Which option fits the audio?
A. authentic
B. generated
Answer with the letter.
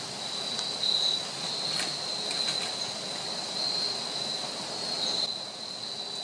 A